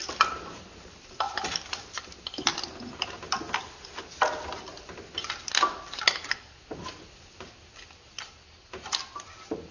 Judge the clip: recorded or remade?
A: recorded